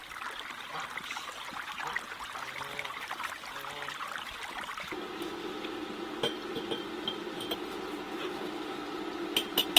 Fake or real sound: real